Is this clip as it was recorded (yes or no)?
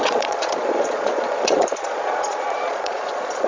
no